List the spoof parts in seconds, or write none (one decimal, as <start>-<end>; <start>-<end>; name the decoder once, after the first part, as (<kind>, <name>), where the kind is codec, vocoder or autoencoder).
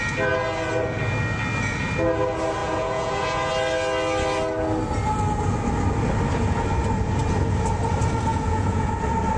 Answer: 2.6-3.5 (vocoder, Vocos); 8.3-8.9